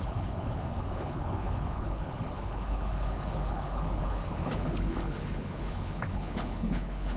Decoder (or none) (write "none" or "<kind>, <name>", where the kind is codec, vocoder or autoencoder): codec, HILCodec